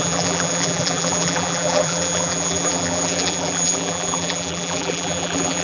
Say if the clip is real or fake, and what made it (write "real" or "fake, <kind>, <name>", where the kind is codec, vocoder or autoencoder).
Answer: fake, vocoder, BigVGAN v2